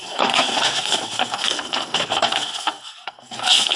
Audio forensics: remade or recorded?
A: remade